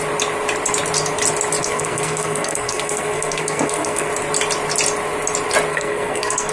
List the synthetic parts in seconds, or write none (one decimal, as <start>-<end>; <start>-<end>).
1.6-4.1; 5.7-6.5